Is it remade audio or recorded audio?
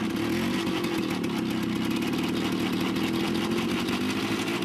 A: recorded